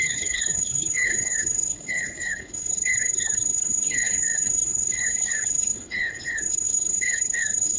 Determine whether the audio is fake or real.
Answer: fake